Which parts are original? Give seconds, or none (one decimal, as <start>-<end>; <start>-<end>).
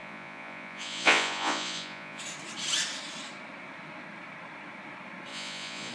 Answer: 2.2-5.3